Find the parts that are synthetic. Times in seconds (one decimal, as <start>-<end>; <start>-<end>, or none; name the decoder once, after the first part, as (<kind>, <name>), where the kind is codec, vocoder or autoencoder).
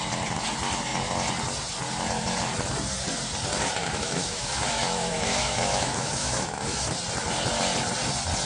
3.8-6.8 (autoencoder, DAC-VAE)